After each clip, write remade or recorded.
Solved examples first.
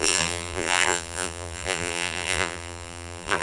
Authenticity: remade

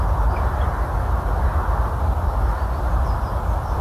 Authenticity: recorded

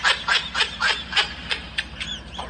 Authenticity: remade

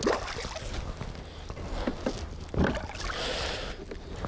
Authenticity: recorded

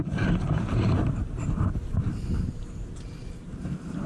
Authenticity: remade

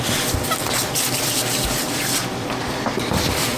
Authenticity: remade